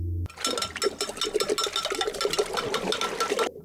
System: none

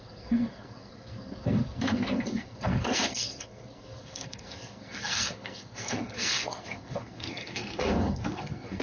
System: codec, SNAC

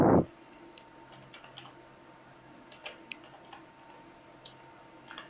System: none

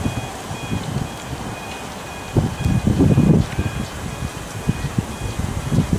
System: none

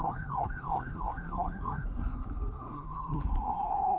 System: codec, SNAC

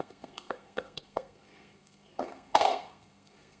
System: codec, SNAC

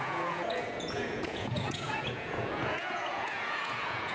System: vocoder, Vocos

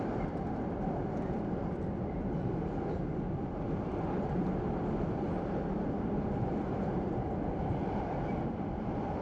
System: none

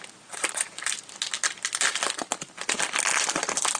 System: none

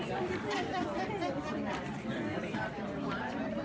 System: none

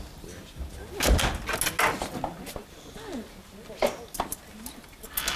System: none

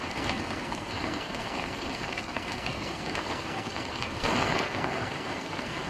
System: codec, SNAC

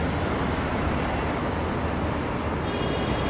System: none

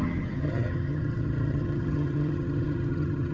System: vocoder, HiFi-GAN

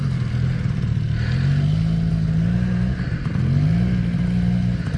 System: none